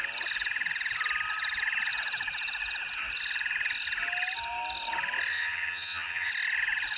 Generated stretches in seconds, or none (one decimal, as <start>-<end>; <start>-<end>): 5.3-6.3

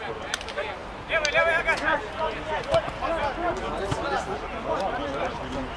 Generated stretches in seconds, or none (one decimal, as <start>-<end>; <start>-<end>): none

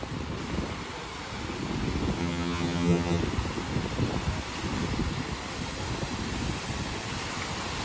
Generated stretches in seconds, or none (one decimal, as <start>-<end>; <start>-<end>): 2.2-3.2

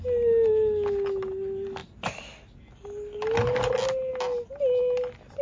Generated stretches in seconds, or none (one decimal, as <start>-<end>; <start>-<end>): none